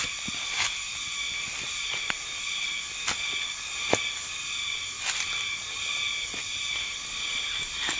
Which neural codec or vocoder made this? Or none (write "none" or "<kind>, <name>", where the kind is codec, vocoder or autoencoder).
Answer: none